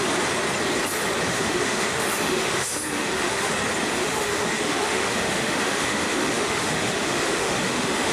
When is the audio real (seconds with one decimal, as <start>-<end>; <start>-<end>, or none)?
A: 0.0-1.3; 3.5-4.0